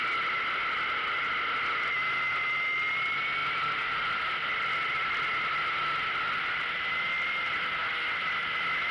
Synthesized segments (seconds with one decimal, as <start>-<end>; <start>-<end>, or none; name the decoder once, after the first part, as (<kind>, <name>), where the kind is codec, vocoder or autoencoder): none